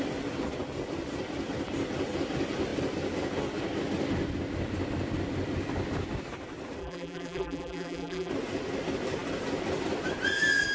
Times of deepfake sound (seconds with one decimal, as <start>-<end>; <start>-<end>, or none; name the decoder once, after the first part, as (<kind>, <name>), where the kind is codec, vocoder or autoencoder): 6.8-8.3 (vocoder, BigVGAN v2)

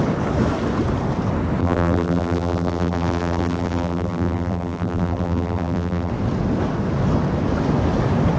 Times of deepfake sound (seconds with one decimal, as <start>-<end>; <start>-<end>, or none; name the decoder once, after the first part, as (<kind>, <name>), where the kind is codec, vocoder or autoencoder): 1.6-6.1 (vocoder, BigVGAN v2)

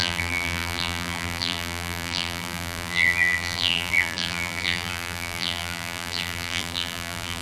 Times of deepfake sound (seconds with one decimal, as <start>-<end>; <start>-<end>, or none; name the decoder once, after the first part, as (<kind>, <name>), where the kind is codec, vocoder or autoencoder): 0.0-7.4 (vocoder, BigVGAN v2)

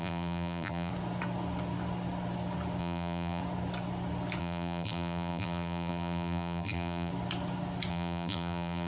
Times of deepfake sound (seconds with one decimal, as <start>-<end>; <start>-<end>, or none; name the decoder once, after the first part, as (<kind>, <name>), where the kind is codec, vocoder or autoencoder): 0.0-0.9 (vocoder, BigVGAN v2); 2.8-3.4; 4.4-7.1; 7.9-8.9

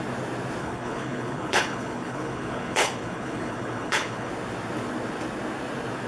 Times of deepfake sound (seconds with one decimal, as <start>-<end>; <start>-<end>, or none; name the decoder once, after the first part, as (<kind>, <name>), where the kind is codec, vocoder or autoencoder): 0.6-4.3 (codec, HILCodec)